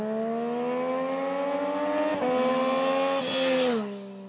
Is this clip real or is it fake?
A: real